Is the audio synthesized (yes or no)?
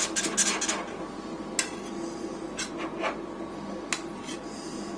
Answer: no